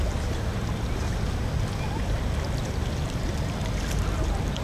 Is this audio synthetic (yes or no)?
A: no